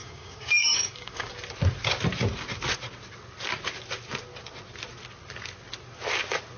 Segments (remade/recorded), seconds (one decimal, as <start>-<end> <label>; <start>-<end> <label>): 0.0-1.3 remade; 1.3-6.6 recorded